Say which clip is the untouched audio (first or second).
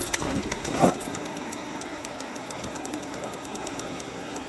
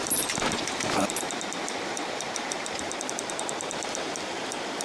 second